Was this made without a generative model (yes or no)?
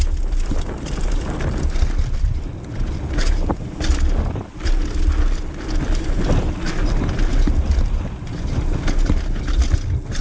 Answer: yes